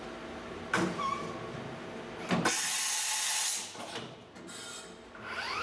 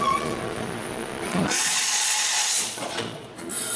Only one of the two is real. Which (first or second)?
first